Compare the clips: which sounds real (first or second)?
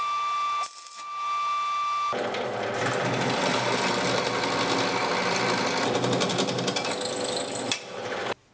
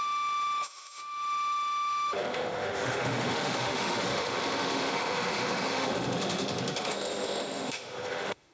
first